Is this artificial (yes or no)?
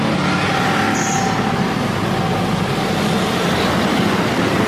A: no